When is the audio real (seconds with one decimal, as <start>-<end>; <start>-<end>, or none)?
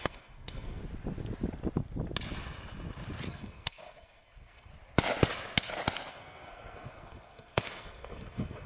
0.8-3.3; 4.7-6.1